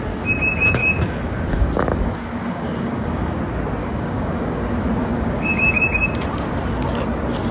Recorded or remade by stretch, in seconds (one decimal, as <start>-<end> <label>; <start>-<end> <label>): 0.0-0.8 recorded; 0.8-3.4 remade; 3.4-3.8 recorded; 3.8-4.6 remade; 4.6-5.0 recorded; 5.0-5.7 remade; 5.7-7.5 recorded